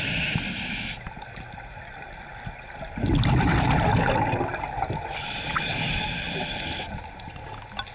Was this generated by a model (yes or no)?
no